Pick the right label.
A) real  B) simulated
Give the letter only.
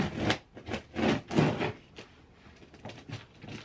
A